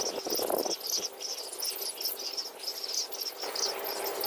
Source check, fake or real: real